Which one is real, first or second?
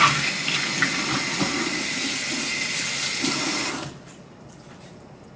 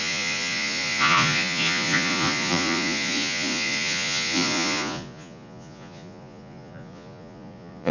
first